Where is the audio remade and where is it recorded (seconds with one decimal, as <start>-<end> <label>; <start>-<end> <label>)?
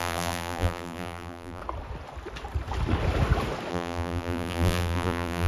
0.0-1.6 remade; 1.6-3.7 recorded; 3.7-5.5 remade